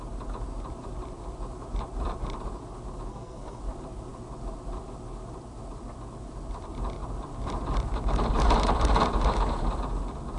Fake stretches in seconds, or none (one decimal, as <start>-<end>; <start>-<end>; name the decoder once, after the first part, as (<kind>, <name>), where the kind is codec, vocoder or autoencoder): 3.1-3.6 (codec, SNAC)